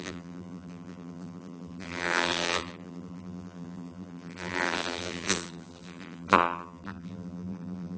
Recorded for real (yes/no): no